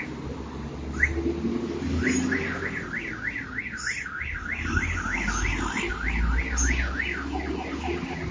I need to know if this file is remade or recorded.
recorded